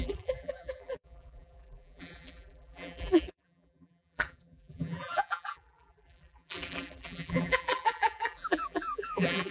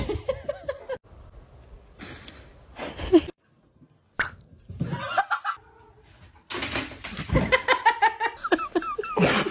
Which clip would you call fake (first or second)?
first